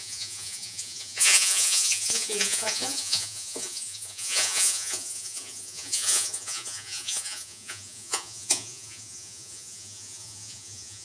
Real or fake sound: fake